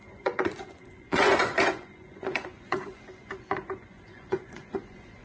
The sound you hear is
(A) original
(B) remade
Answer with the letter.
B